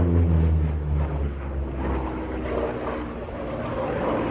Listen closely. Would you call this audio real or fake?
real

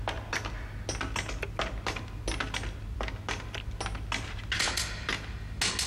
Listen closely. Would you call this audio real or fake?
real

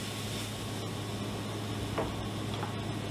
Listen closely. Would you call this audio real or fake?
real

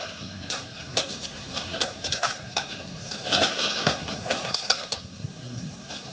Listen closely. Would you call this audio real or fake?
fake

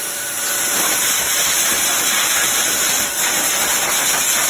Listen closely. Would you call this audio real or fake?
real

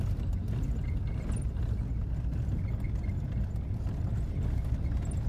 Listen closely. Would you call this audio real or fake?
real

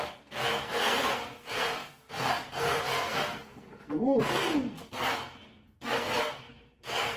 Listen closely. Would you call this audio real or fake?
fake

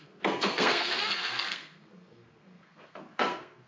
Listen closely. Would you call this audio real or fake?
fake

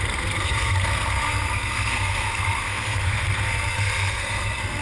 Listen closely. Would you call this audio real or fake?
fake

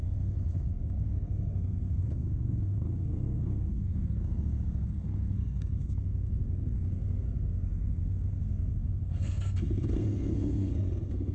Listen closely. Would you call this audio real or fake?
fake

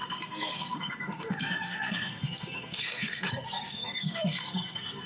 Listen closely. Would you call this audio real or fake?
fake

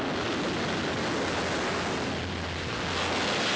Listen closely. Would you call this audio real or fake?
real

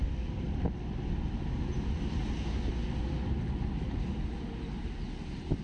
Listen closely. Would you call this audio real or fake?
real